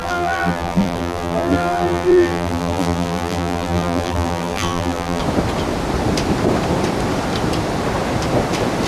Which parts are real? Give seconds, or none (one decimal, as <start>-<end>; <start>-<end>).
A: 5.2-8.9

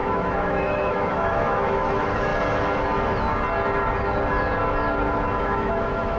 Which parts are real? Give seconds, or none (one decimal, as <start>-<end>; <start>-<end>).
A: 2.3-5.4

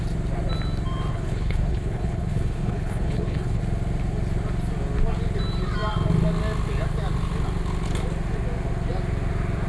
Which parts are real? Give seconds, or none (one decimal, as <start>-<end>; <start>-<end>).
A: 0.0-1.1; 3.6-9.7

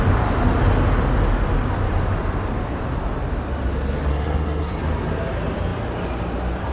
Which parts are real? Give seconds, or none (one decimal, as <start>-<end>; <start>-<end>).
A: 0.0-4.1; 4.8-6.7

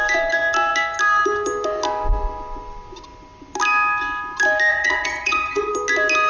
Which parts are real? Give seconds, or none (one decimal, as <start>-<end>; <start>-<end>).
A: 0.0-4.7; 5.7-6.3

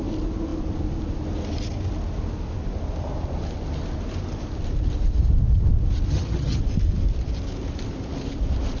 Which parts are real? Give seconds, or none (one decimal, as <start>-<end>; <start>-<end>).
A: 0.0-6.1; 6.6-8.8

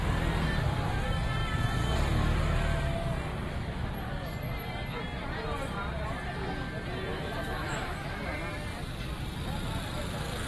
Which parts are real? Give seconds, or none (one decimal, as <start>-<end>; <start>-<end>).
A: 0.0-7.1; 8.2-10.5

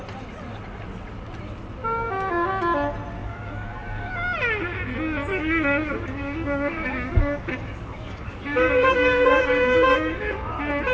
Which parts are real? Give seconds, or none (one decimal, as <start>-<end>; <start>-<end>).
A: 0.0-1.8; 2.5-3.2; 4.1-5.3; 10.5-10.9